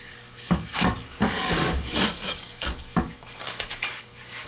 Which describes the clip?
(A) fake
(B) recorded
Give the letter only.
A